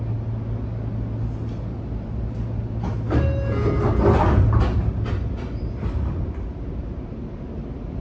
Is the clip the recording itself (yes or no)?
yes